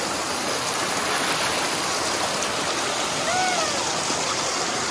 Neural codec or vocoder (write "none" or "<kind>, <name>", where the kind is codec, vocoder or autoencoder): none